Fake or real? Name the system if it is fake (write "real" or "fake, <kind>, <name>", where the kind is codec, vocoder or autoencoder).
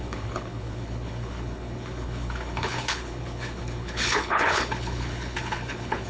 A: fake, codec, HILCodec